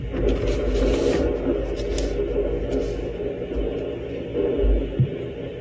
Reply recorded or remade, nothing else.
recorded